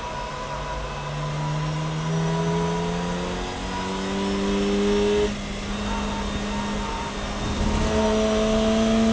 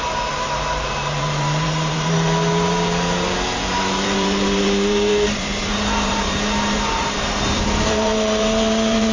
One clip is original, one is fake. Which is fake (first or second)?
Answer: second